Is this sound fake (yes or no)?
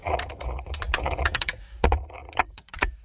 yes